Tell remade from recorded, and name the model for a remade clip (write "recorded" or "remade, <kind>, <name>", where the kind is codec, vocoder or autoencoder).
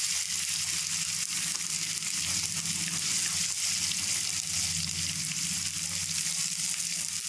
recorded